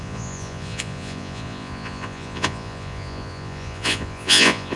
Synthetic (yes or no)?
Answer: yes